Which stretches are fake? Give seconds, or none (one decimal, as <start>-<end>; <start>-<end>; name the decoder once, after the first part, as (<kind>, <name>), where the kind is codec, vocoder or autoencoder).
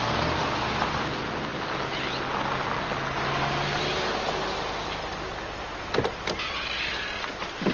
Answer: none